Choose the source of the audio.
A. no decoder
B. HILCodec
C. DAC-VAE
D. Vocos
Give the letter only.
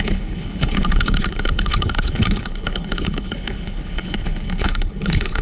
B